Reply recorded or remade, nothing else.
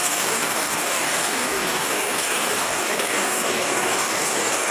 remade